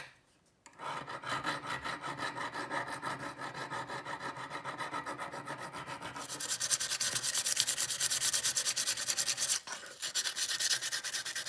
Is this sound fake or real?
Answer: real